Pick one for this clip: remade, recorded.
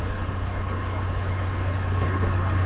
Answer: remade